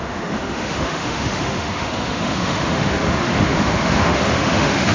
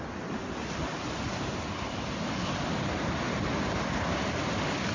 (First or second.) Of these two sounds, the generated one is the first